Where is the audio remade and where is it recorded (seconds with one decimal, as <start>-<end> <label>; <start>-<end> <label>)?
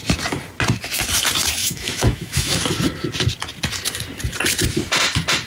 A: 0.0-1.6 recorded; 1.6-2.6 remade; 2.6-5.5 recorded